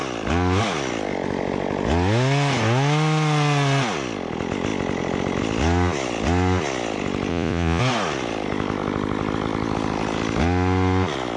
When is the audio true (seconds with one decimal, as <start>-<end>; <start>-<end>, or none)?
0.0-7.3; 7.8-11.4